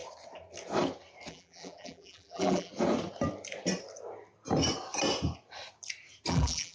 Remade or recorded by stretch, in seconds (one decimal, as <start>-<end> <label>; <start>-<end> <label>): 0.0-1.3 recorded; 1.3-2.7 remade; 2.7-6.3 recorded; 6.3-6.7 remade